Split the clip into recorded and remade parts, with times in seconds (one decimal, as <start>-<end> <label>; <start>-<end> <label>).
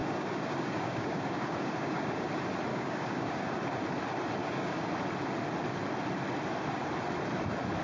0.0-2.3 remade; 2.3-2.7 recorded; 2.7-3.8 remade; 3.8-4.4 recorded; 4.4-4.9 remade; 4.9-7.8 recorded